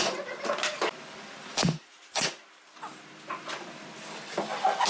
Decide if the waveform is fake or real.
real